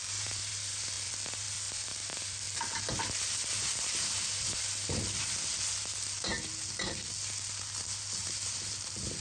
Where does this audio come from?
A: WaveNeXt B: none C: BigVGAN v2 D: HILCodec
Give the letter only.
B